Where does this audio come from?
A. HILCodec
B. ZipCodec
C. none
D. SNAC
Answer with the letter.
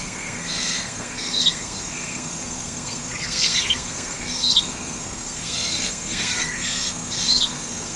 D